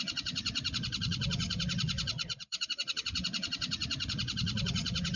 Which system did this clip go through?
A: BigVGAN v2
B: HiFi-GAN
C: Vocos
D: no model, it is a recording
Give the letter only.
C